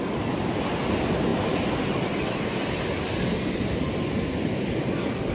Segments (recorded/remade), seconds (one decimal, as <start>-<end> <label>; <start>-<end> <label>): 0.0-5.3 recorded